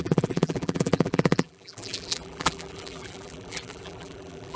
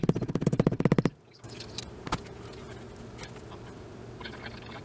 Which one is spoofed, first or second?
first